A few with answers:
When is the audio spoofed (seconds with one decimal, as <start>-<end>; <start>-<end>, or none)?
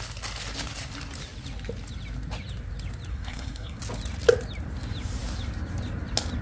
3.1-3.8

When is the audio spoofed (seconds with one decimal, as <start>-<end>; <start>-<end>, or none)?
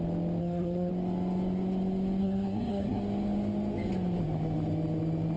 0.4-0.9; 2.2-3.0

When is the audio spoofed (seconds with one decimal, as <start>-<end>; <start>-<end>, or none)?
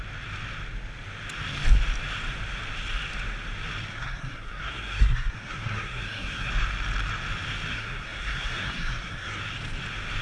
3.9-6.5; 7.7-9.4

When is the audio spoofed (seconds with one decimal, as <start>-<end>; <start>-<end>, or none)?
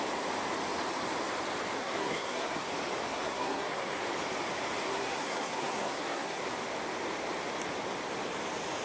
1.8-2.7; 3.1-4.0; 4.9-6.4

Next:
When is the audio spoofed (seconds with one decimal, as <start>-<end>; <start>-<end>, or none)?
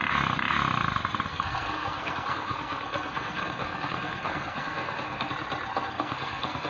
1.3-5.3; 5.7-6.7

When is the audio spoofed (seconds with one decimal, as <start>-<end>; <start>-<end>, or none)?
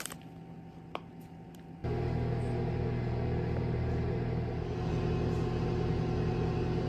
none